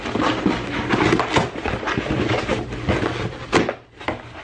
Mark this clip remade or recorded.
recorded